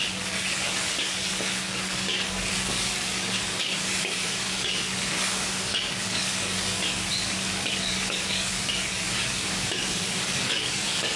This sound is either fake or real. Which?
fake